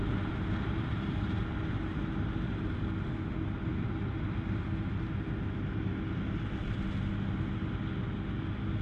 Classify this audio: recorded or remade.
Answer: recorded